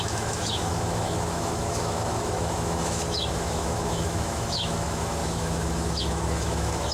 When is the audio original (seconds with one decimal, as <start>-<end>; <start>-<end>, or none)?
none